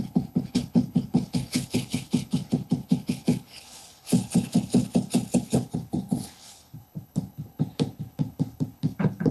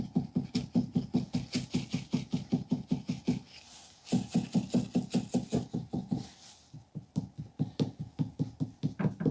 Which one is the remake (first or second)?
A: first